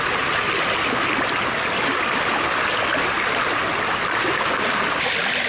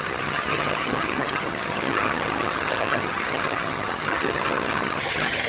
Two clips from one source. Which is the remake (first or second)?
second